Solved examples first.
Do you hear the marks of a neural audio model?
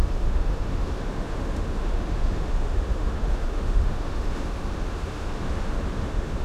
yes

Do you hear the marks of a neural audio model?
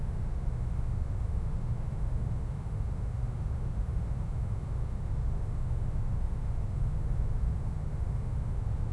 yes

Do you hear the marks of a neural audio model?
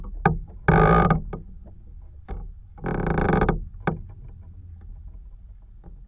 no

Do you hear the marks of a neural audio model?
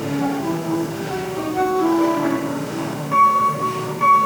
yes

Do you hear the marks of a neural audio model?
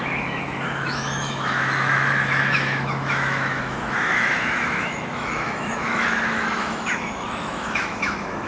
yes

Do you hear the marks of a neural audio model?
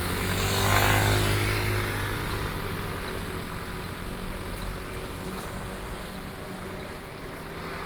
no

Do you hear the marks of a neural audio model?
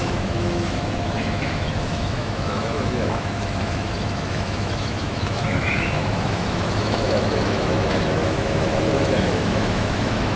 yes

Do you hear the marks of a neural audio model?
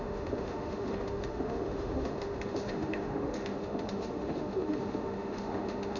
yes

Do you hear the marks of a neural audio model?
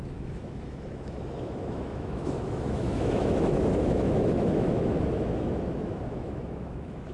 yes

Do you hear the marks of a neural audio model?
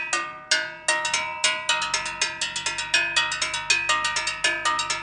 no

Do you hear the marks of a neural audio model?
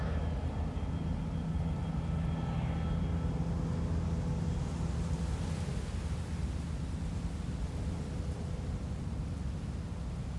no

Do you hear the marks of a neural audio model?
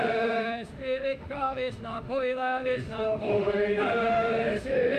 yes